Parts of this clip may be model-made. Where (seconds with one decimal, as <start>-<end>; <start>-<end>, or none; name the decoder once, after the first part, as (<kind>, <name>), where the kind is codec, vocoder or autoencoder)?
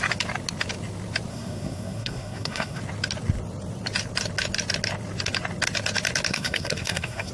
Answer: 1.3-2.8 (codec, SNAC); 6.3-7.3